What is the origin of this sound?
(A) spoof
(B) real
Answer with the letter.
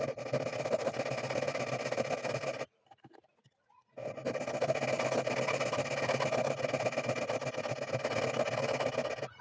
B